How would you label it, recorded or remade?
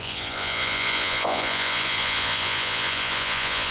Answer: remade